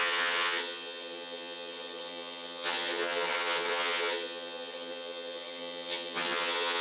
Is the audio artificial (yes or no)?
yes